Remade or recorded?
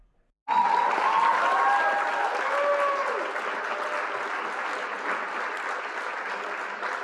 recorded